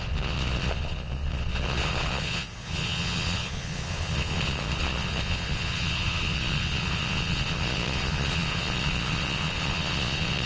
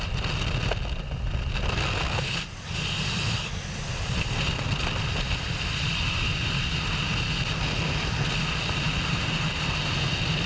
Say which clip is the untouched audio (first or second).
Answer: second